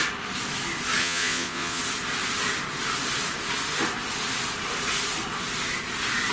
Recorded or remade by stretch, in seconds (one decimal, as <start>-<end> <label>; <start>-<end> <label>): 0.0-1.0 recorded; 1.0-1.8 remade; 1.8-6.3 recorded